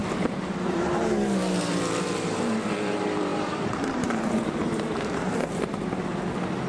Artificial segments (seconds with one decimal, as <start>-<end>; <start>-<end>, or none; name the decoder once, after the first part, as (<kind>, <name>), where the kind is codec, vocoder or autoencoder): 0.0-6.7 (vocoder, BigVGAN v2)